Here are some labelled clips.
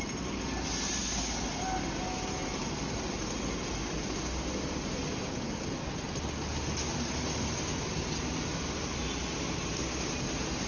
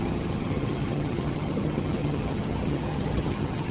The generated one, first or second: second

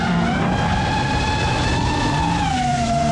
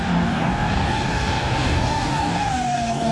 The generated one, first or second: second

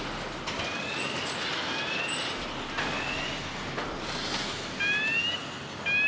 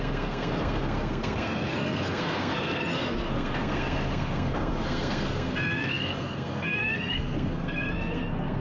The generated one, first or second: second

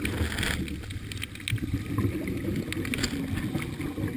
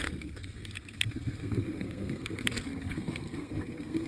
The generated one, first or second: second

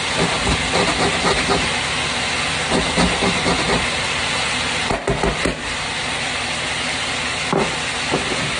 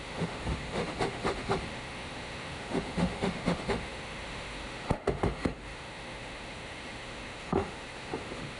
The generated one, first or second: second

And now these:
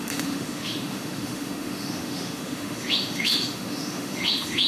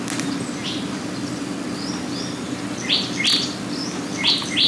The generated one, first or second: first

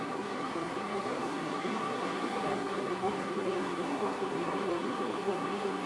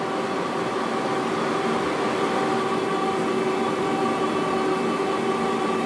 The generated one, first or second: first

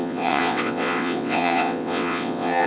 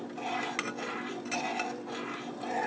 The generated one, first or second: first